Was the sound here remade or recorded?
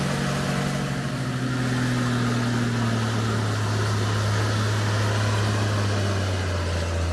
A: recorded